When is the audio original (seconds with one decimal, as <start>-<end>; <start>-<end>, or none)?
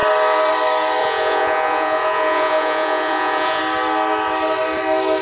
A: 0.0-1.0; 3.6-5.2